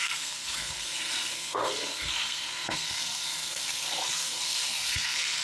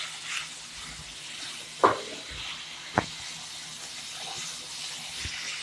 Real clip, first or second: second